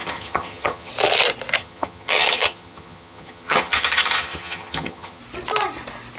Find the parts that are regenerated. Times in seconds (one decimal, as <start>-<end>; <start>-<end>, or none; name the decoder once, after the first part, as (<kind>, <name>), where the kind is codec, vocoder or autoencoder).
0.0-0.9 (vocoder, HiFi-GAN); 1.6-5.2